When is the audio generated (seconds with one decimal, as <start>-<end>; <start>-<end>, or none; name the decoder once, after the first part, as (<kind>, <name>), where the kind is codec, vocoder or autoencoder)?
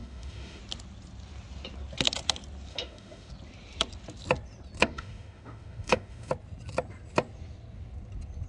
0.0-0.6 (autoencoder, DAC-VAE); 2.7-3.3; 4.8-6.3